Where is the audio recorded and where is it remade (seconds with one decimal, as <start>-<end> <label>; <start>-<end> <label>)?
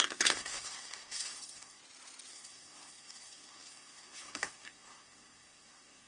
0.0-1.8 remade; 1.8-2.3 recorded; 2.3-6.1 remade